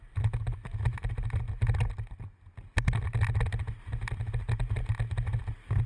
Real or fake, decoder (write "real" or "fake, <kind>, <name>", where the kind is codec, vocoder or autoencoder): real